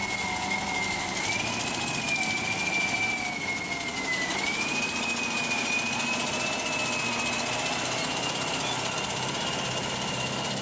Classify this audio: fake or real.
real